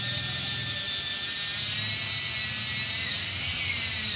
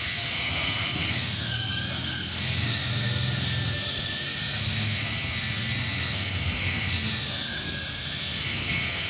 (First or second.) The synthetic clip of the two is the second